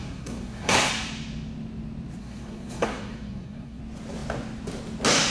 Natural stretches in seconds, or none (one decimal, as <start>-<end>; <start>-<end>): 0.9-2.2; 3.8-5.3